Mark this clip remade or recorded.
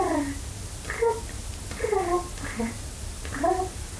recorded